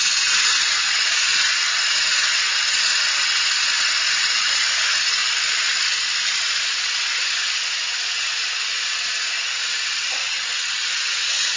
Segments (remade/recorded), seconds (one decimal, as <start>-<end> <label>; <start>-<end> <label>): 0.0-5.2 remade; 5.2-6.3 recorded; 6.3-11.6 remade